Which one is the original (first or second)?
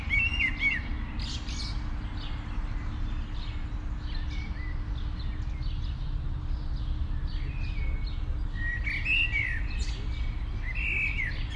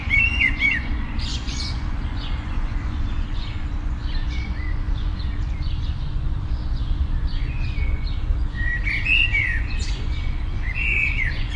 first